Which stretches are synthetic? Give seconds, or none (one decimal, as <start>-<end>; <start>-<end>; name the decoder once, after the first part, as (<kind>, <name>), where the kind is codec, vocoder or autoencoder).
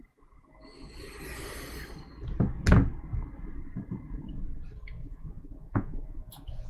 5.0-6.7 (vocoder, Vocos)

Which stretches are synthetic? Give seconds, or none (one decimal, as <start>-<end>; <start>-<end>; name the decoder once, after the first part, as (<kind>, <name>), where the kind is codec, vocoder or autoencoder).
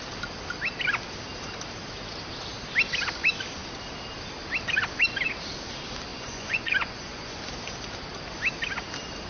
6.1-7.4 (vocoder, Vocos)